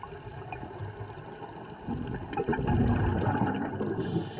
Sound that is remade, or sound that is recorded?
recorded